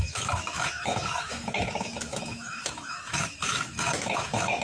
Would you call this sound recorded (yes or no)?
no